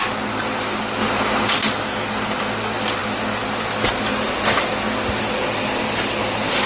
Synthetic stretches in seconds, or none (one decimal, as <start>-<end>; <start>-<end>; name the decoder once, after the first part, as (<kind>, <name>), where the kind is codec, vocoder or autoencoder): none